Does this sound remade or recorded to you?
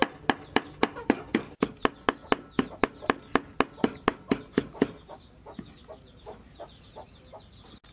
recorded